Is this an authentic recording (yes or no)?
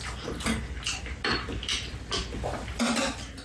yes